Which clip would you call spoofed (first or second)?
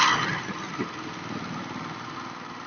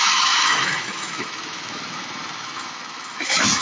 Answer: second